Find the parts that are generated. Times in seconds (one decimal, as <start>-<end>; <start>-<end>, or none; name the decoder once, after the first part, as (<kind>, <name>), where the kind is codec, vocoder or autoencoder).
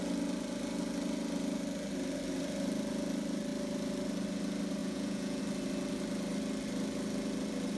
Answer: 4.8-5.4 (vocoder, Vocos)